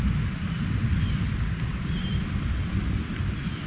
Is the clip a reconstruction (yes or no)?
no